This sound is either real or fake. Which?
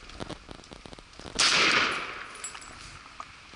real